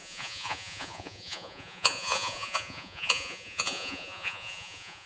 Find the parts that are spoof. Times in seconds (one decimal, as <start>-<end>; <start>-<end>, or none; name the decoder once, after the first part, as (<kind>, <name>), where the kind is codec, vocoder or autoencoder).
0.0-5.1 (vocoder, Vocos)